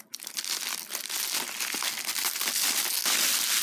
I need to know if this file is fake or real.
real